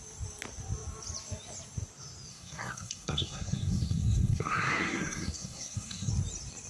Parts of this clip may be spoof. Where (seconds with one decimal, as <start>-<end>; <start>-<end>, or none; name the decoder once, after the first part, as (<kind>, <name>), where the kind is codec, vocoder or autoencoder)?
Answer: 2.3-6.1 (codec, SNAC)